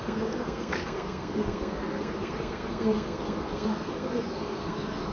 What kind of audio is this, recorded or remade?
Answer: remade